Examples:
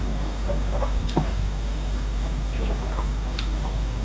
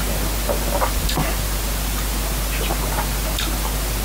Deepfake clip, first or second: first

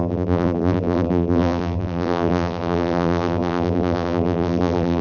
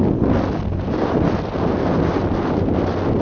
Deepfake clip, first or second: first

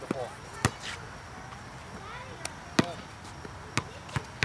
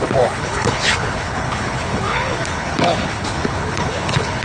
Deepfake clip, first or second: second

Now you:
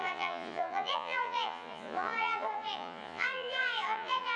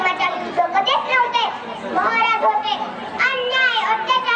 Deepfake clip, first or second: first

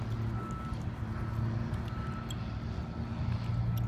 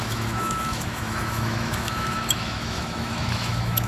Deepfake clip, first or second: second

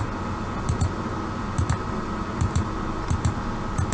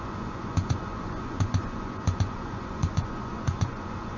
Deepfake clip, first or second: second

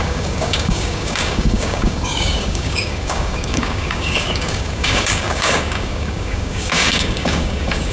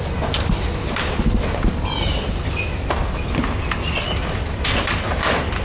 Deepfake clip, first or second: first